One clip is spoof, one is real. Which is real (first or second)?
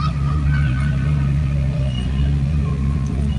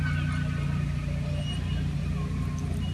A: second